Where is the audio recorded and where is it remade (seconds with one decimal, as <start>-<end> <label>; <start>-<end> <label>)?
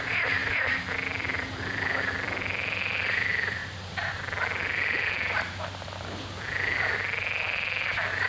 0.0-3.6 remade; 3.6-6.4 recorded; 6.4-8.3 remade